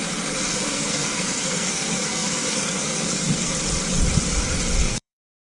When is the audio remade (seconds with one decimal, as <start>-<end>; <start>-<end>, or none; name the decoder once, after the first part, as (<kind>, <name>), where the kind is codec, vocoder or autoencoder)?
0.5-3.5 (codec, SNAC); 4.8-5.6